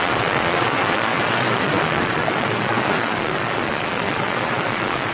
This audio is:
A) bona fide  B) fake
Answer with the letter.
B